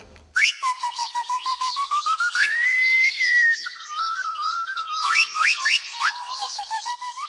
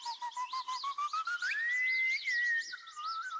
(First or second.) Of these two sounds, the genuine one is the second